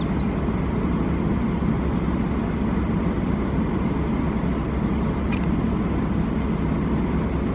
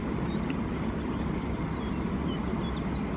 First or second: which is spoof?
second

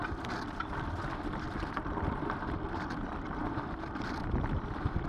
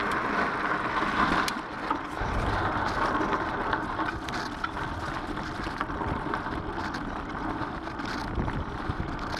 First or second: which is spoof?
first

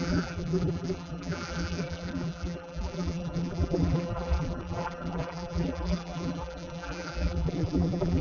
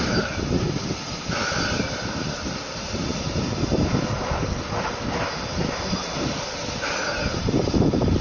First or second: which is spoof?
first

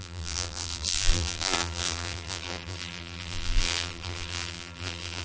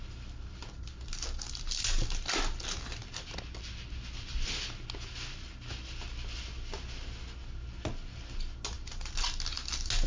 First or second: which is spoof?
first